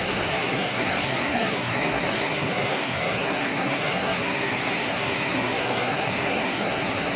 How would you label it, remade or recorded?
remade